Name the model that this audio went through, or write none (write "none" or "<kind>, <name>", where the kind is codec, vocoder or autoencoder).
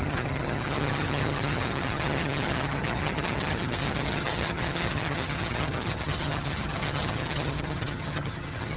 vocoder, HiFi-GAN